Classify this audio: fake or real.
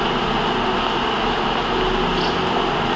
real